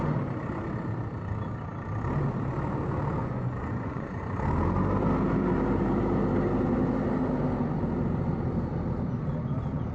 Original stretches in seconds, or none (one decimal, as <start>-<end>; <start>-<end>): 0.0-3.2; 4.2-9.9

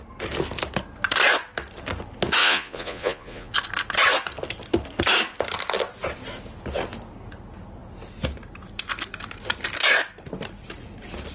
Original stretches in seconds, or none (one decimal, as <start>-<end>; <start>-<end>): 0.0-2.4; 3.5-11.3

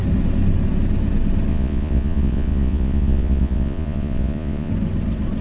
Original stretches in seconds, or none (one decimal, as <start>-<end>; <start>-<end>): 0.0-1.5; 4.7-5.4

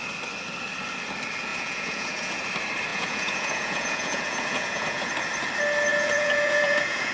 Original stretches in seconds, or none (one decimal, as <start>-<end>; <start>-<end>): 0.0-1.5; 2.4-2.9; 5.1-5.9

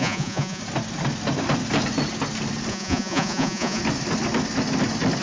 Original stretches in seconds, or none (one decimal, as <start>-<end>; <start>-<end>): 0.6-2.7; 3.8-5.2

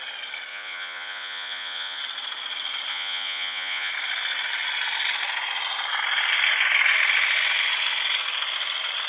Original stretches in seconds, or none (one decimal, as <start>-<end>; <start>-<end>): 0.0-0.5; 2.0-2.9; 3.9-9.1